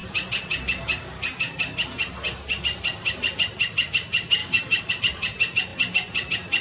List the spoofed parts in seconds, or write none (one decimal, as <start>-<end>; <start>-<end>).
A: 4.4-4.9